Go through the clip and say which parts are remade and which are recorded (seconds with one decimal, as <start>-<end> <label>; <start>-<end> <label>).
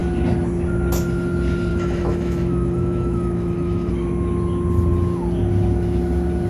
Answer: 0.0-1.7 recorded; 1.7-3.9 remade; 3.9-6.5 recorded